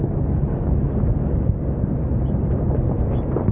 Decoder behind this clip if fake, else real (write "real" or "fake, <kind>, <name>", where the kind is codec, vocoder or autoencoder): real